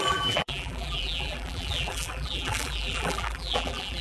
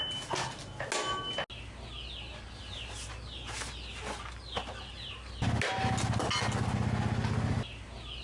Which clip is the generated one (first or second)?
first